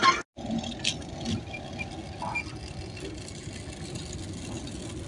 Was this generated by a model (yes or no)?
no